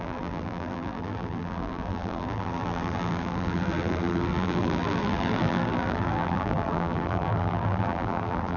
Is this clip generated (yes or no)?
yes